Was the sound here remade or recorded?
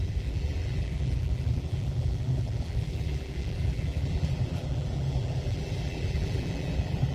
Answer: remade